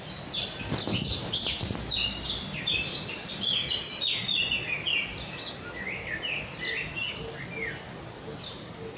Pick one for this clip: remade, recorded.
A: recorded